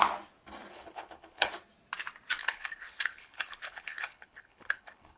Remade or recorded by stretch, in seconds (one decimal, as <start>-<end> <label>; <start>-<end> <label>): 0.0-0.7 recorded; 0.7-1.5 remade; 1.5-2.4 recorded; 2.4-5.2 remade